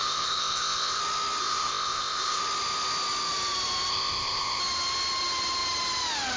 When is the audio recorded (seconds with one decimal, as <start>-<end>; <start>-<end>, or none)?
1.0-1.4; 2.4-3.9; 4.6-6.4

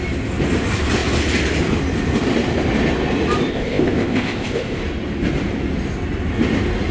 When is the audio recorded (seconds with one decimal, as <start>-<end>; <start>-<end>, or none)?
0.0-3.5; 4.8-6.9

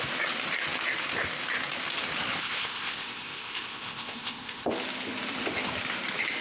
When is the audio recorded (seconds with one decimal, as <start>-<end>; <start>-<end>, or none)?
0.0-2.4; 4.7-6.4